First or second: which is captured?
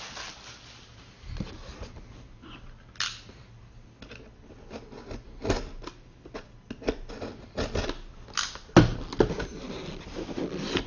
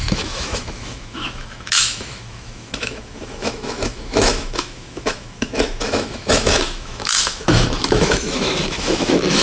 first